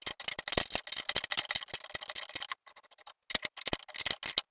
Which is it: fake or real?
real